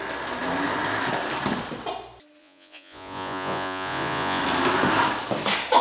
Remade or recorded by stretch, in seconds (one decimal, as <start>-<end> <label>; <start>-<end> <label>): 0.0-2.4 recorded; 2.4-4.4 remade; 4.4-5.8 recorded